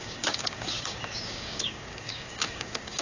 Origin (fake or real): fake